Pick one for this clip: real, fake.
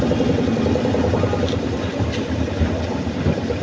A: real